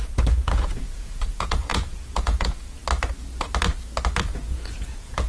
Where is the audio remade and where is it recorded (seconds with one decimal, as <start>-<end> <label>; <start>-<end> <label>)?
0.0-2.8 remade; 2.8-4.2 recorded; 4.2-5.3 remade